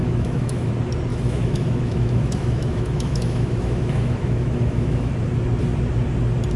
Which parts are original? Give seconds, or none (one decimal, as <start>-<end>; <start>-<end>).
0.7-1.1; 5.1-6.6